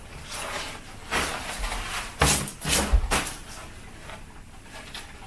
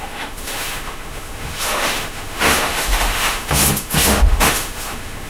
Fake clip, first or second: second